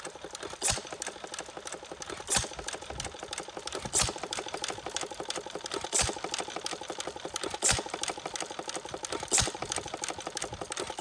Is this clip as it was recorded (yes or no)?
yes